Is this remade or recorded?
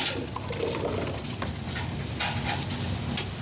recorded